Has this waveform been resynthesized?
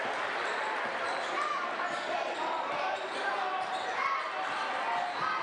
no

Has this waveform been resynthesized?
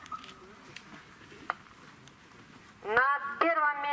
no